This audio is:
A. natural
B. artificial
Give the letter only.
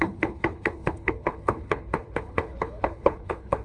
B